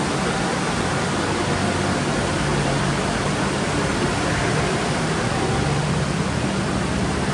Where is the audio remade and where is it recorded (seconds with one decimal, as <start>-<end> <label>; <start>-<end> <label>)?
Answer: 0.0-2.5 recorded; 2.5-7.3 remade